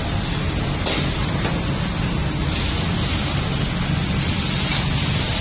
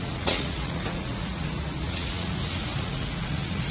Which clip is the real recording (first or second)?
first